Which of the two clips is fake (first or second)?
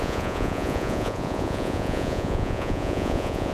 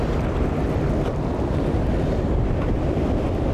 first